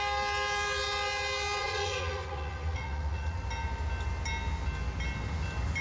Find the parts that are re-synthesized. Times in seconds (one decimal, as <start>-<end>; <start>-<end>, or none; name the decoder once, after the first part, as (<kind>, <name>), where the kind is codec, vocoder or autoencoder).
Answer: 1.6-3.4 (vocoder, Vocos)